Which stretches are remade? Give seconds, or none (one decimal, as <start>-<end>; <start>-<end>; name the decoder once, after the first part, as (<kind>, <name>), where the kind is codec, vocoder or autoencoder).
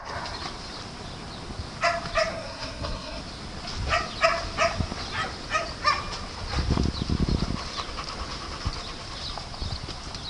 2.3-3.2 (codec, SNAC)